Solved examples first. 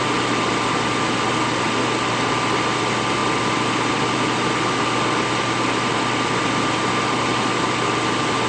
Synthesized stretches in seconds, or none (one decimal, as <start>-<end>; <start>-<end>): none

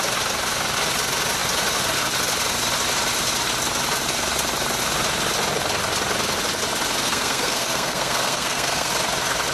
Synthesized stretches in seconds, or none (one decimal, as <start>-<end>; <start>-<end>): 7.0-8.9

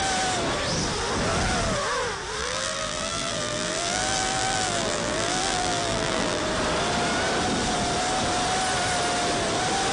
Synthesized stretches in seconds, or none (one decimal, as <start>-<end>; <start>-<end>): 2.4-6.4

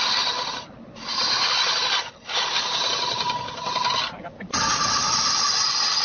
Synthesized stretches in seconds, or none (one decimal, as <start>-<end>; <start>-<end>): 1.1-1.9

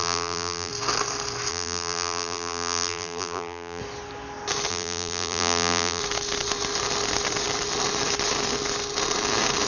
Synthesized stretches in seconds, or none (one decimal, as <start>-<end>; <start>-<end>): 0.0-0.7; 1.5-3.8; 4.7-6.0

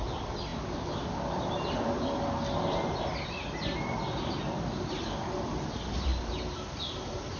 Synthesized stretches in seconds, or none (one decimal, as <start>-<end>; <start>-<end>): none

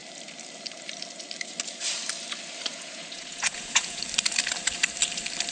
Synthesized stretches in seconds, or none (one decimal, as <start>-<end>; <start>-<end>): 2.7-4.0